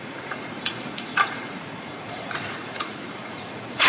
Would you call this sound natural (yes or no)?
no